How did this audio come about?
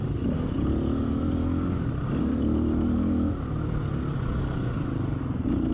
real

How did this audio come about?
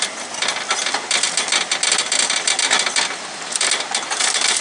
real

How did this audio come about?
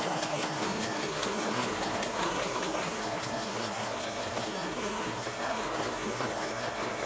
fake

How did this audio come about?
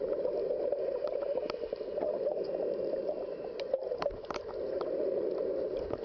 real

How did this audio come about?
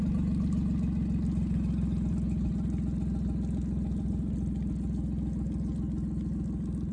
real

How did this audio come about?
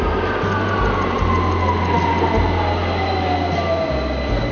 real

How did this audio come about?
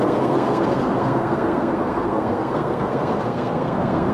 fake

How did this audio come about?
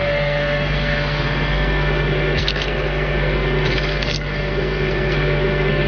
fake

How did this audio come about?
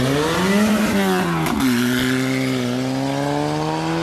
real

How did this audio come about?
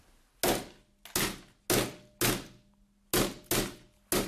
real